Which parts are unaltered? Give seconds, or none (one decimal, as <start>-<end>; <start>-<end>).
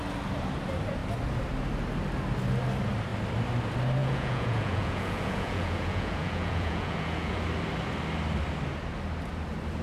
0.0-4.0; 7.4-9.8